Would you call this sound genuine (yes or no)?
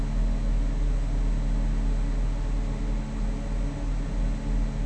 yes